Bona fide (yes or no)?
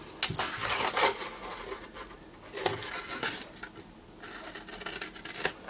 yes